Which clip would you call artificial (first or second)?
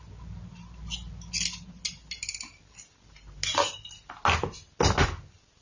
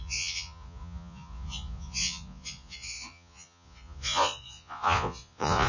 second